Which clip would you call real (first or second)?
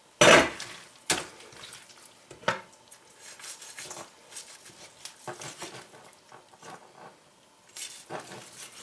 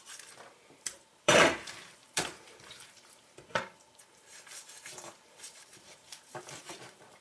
first